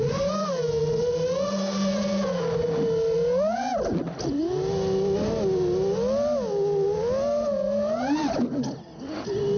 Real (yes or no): yes